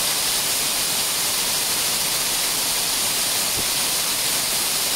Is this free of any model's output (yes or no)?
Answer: yes